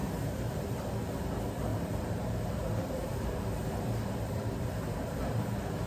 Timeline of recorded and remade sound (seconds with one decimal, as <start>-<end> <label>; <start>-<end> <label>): 0.0-0.9 remade; 0.9-1.7 recorded; 1.7-5.2 remade; 5.2-5.9 recorded